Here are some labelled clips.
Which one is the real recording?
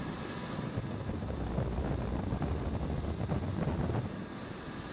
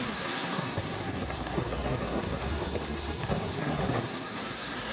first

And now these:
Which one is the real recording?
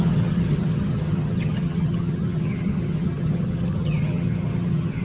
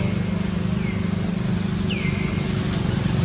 second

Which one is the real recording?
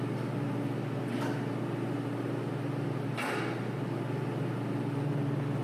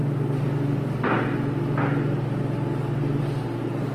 second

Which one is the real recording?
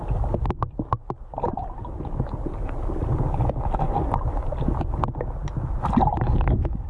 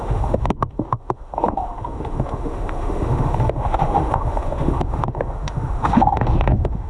first